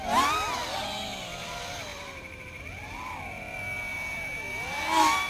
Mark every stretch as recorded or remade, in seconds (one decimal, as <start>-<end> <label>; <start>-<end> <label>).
0.0-1.9 recorded; 1.9-2.6 remade; 2.6-5.3 recorded